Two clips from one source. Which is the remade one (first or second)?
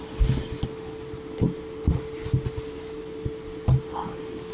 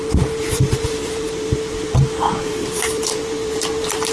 second